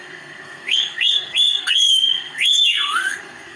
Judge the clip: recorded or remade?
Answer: remade